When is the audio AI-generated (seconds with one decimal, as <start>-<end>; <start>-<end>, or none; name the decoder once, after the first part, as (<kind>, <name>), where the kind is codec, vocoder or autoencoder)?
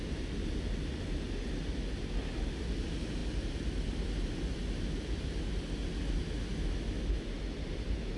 none